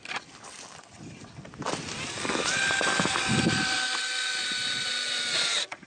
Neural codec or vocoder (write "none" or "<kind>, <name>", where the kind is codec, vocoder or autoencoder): none